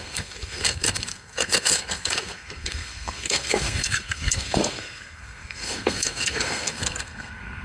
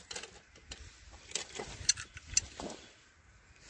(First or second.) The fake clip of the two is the first